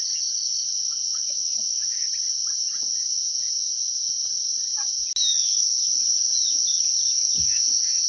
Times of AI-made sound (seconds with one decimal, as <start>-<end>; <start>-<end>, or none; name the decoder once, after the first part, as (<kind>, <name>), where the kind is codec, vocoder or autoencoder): 0.7-2.1 (autoencoder, DAC-VAE); 5.3-6.0